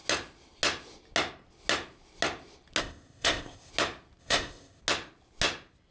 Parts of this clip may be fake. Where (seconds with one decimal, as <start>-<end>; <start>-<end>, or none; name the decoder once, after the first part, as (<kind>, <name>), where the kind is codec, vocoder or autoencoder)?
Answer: 2.8-3.7 (codec, ZipCodec); 4.2-4.8